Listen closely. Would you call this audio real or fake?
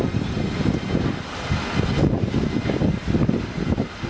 real